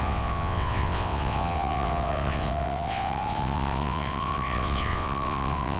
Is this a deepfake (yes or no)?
yes